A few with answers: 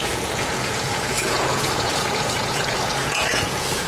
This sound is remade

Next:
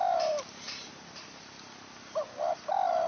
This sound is recorded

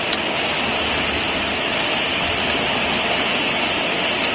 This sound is recorded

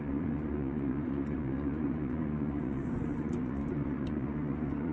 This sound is remade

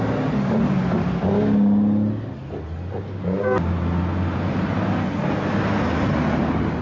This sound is recorded